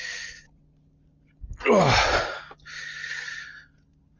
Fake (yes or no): no